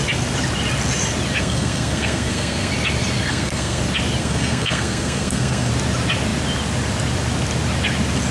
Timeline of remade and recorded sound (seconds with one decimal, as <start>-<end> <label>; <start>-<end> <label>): 0.0-1.4 recorded; 1.4-2.7 remade; 2.7-3.3 recorded; 3.3-3.8 remade; 3.8-4.2 recorded; 4.2-5.7 remade; 5.7-8.3 recorded